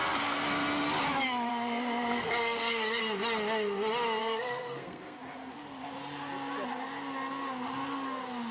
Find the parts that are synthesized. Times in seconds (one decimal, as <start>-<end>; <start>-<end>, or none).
1.5-3.0; 4.2-5.2